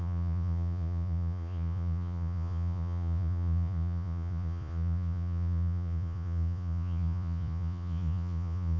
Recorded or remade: remade